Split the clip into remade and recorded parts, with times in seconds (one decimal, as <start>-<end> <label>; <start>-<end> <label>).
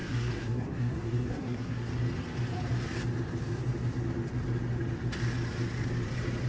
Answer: 0.0-1.9 remade; 1.9-6.5 recorded